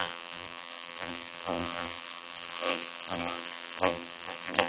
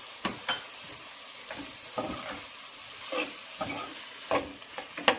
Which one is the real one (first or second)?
second